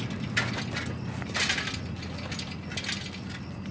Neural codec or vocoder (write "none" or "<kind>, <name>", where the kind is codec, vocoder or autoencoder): none